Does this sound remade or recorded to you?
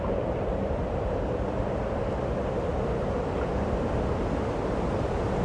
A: recorded